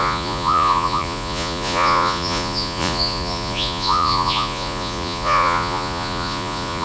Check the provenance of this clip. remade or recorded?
remade